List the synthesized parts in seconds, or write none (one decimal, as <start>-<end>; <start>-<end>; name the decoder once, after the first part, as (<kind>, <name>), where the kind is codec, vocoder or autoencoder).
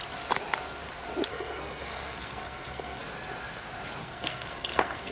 1.3-3.0 (codec, SNAC); 4.0-5.1